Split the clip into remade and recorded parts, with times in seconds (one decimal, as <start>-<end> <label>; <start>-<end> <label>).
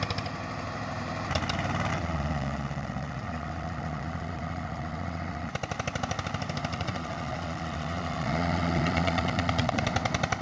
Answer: 0.0-1.9 recorded; 1.9-5.5 remade; 5.5-6.7 recorded; 6.7-9.8 remade; 9.8-10.4 recorded